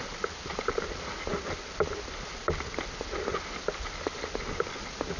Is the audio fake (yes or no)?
no